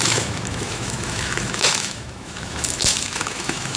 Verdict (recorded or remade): remade